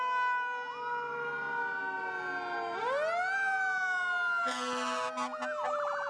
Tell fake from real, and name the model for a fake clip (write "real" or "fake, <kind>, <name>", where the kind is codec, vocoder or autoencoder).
real